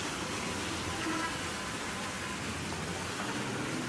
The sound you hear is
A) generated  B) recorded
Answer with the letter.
B